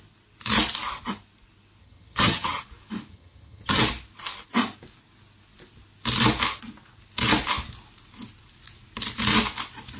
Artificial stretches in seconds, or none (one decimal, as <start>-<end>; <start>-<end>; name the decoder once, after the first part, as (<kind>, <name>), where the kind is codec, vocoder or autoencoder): 1.8-2.6 (vocoder, HiFi-GAN); 3.1-3.8